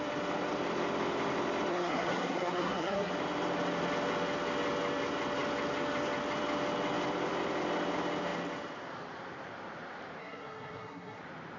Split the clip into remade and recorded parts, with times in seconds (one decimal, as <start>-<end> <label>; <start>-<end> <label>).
0.0-1.7 recorded; 1.7-3.1 remade; 3.1-10.2 recorded; 10.2-11.2 remade; 11.2-11.6 recorded